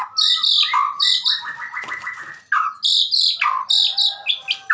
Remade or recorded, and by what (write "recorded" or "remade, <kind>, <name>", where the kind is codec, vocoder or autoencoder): recorded